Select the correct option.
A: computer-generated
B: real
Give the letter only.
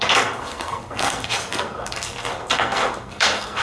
A